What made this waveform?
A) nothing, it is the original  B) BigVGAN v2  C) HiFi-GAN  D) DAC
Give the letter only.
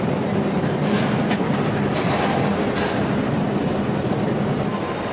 A